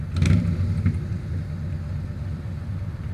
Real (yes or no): yes